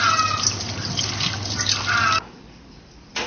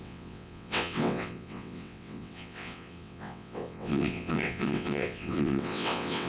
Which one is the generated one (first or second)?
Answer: second